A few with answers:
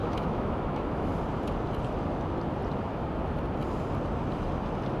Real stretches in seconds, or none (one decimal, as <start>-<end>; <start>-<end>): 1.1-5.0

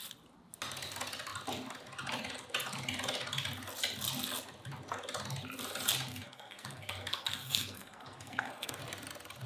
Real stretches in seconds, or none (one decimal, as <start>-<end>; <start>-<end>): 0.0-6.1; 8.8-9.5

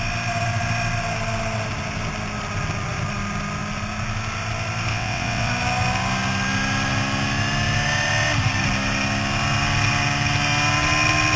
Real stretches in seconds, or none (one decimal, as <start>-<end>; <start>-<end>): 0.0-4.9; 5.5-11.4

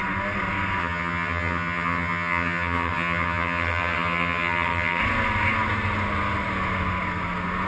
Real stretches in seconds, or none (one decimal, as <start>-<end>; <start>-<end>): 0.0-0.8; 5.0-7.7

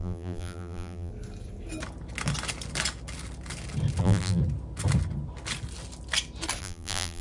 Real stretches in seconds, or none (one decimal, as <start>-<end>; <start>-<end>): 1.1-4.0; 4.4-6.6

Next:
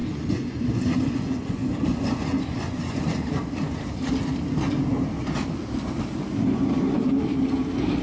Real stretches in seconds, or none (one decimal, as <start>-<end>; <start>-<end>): 3.8-8.0

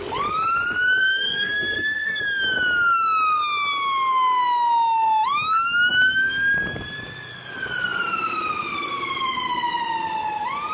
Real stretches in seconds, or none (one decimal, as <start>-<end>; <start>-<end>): 0.0-1.0; 2.2-10.7